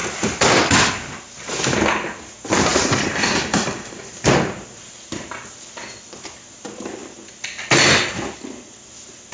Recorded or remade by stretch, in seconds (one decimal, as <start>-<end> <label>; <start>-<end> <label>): 0.0-0.6 remade; 0.6-2.7 recorded; 2.7-3.7 remade; 3.7-9.3 recorded